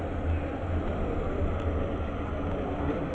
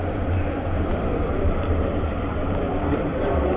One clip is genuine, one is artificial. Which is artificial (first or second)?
second